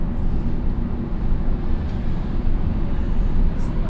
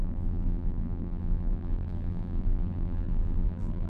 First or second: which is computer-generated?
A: second